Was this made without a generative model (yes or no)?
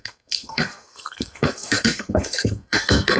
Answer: no